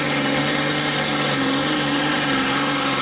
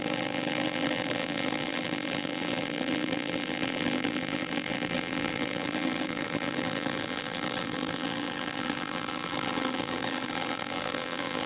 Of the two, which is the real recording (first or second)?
first